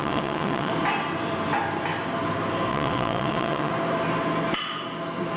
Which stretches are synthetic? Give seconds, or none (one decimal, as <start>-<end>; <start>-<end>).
0.0-0.7; 2.7-3.7